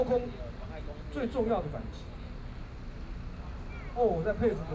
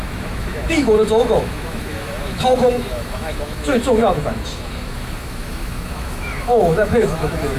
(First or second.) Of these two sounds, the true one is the first